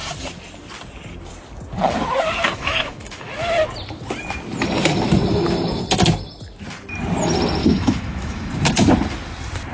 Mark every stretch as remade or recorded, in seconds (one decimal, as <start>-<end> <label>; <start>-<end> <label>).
0.0-2.5 recorded; 2.5-3.3 remade; 3.3-7.6 recorded; 7.6-8.5 remade; 8.5-9.7 recorded